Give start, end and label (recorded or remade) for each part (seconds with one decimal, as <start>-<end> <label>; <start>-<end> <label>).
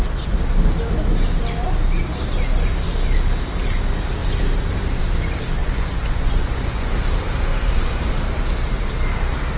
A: 0.0-5.6 recorded; 5.6-6.9 remade; 6.9-7.5 recorded; 7.5-8.1 remade; 8.1-9.6 recorded